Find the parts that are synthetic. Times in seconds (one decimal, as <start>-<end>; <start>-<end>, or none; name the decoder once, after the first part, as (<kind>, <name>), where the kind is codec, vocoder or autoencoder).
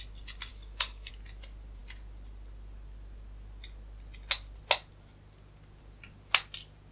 0.5-1.1 (codec, DAC)